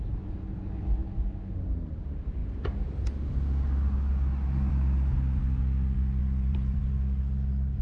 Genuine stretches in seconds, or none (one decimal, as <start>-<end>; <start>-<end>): 0.0-6.2; 6.8-7.8